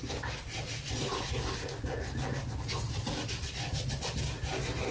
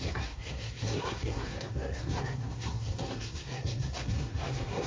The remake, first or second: second